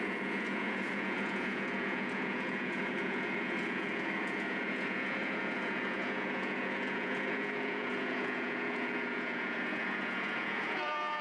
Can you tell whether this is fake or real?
fake